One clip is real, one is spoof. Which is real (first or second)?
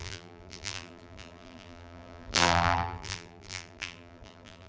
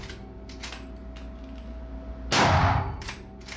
second